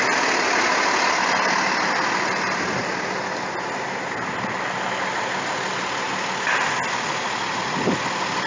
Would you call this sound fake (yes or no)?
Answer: no